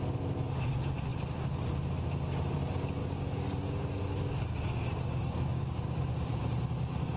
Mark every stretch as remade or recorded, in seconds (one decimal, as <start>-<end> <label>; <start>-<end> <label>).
0.0-3.0 recorded; 3.0-6.0 remade; 6.0-7.2 recorded